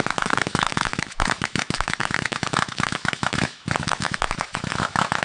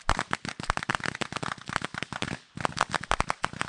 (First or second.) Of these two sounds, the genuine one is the second